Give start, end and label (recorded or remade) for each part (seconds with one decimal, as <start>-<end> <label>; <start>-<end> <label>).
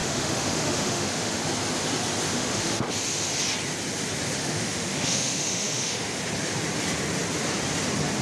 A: 0.0-1.4 remade; 1.4-2.3 recorded; 2.3-2.9 remade; 2.9-4.4 recorded; 4.4-6.2 remade; 6.2-8.2 recorded